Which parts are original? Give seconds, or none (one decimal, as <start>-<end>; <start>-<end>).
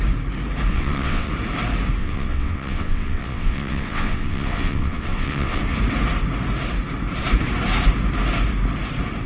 0.0-0.7; 1.3-2.0; 5.6-9.3